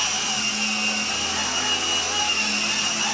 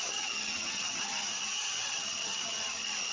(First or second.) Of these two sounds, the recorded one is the first